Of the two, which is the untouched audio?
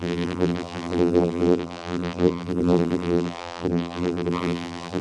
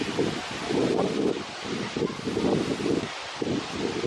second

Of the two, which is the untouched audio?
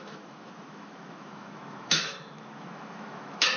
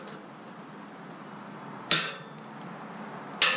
second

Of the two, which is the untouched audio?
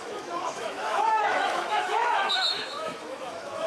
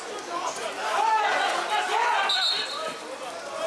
second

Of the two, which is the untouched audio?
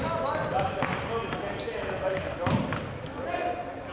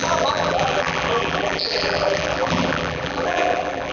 first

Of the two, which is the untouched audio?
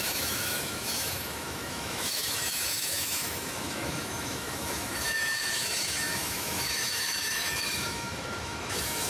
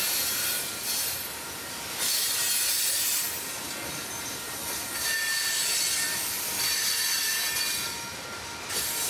second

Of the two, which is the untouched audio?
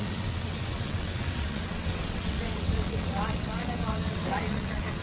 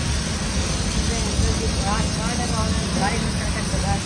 second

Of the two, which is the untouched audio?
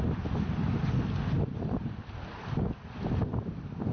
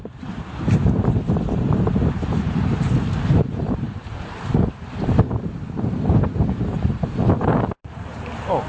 first